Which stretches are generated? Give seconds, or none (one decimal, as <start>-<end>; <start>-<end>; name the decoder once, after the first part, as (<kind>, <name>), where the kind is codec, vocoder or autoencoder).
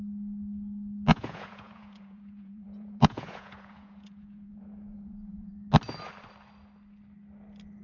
1.1-5.5 (vocoder, Vocos)